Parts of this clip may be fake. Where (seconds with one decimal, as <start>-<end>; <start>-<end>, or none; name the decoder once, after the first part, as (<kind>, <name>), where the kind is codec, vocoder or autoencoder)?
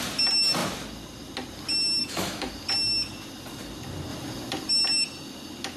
2.0-2.5 (autoencoder, DAC-VAE)